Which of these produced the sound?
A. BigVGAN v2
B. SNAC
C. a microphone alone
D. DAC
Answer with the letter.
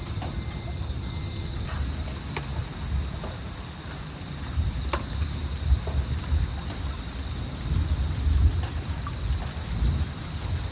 C